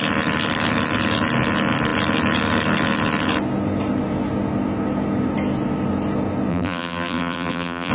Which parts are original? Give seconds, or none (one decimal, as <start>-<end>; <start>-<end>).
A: 0.0-6.5